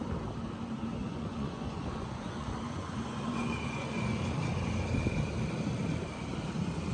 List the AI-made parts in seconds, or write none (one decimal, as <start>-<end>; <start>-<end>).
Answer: 1.0-4.2